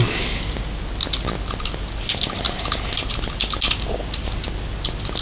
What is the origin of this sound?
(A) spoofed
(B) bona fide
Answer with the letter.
B